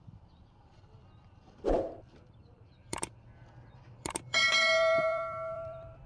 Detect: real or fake fake